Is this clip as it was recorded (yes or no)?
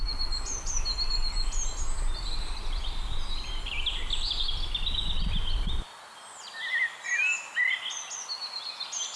yes